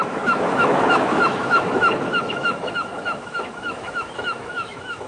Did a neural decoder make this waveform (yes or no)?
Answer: yes